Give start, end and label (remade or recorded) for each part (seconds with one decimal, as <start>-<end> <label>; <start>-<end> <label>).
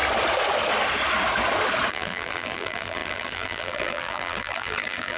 0.0-1.9 recorded; 1.9-5.2 remade